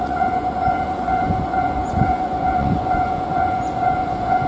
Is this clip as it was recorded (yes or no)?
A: no